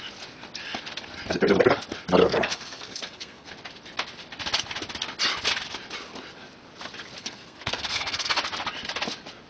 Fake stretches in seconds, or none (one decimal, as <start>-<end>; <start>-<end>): 2.2-3.5; 7.2-8.3